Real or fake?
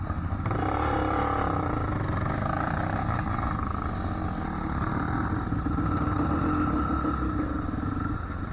real